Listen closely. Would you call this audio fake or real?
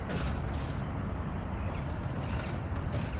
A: real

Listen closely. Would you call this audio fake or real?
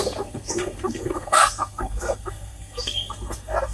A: fake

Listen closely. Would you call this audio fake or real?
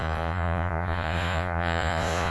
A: fake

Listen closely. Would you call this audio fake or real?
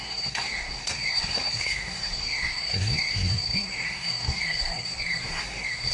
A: fake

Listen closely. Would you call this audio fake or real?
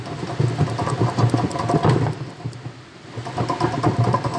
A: real